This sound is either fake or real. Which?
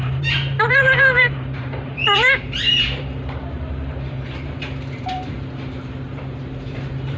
fake